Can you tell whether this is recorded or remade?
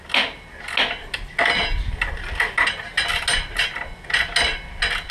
recorded